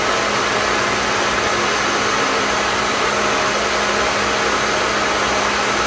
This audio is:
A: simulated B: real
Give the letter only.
B